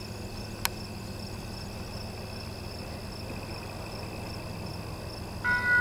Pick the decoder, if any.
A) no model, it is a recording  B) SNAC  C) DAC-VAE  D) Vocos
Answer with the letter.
A